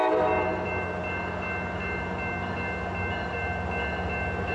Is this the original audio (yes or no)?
yes